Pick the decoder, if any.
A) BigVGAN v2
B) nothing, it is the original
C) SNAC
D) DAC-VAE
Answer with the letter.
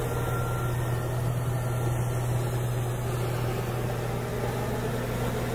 B